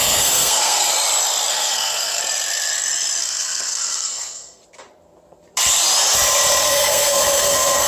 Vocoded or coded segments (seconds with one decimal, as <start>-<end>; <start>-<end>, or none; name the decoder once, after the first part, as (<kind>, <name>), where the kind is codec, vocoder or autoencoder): 0.0-0.9 (codec, SNAC); 1.5-2.2; 3.2-4.6; 6.6-7.9